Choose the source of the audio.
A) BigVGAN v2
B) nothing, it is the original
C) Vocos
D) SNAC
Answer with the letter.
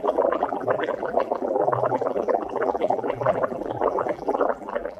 A